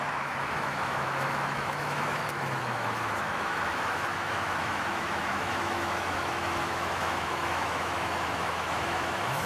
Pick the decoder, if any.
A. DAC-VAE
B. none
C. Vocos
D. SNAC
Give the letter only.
A